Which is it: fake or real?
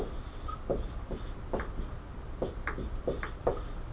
real